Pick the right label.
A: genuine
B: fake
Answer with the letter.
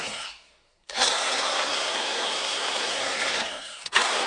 B